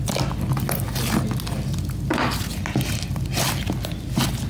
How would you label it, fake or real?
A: real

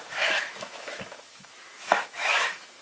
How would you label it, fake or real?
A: fake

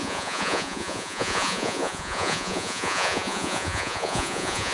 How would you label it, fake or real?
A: fake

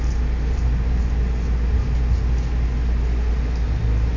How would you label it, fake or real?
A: real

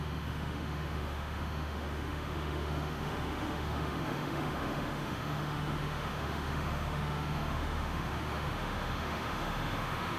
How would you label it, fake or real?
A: fake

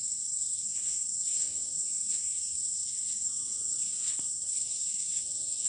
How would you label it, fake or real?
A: fake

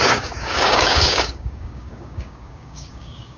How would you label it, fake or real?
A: fake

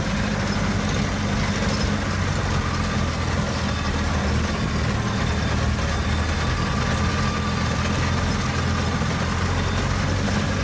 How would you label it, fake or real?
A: real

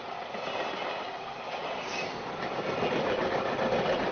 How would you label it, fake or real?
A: real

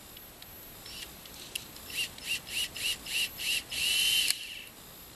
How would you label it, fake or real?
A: real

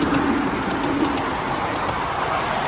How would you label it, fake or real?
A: real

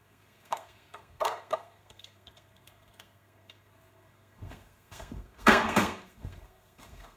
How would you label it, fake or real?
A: fake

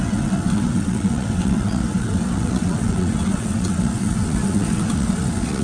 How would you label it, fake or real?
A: fake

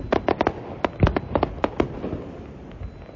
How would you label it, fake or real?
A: real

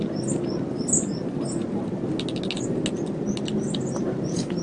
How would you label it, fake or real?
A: real